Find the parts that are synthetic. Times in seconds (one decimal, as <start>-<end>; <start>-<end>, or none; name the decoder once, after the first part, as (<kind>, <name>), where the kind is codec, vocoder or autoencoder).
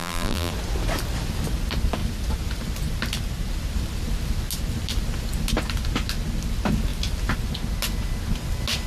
0.0-0.5 (vocoder, BigVGAN v2)